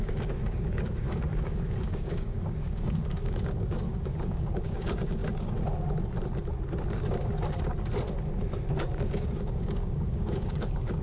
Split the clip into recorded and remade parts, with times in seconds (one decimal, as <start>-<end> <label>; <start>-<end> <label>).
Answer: 0.0-5.2 remade; 5.2-8.7 recorded; 8.7-11.0 remade